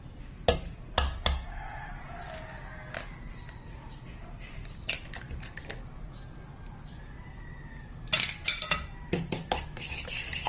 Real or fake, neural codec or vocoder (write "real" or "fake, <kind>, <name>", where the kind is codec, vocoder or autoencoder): real